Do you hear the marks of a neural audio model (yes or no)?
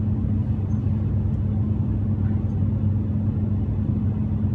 no